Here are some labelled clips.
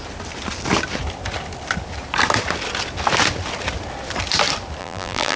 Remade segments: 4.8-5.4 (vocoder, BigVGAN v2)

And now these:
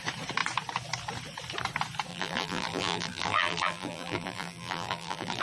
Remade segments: 2.1-5.4 (vocoder, BigVGAN v2)

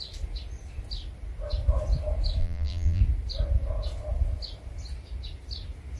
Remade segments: 2.4-3.0 (vocoder, BigVGAN v2)

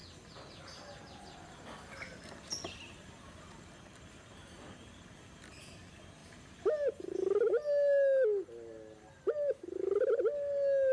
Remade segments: none

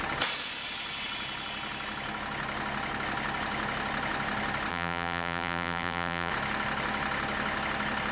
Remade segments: 4.7-6.3 (vocoder, BigVGAN v2)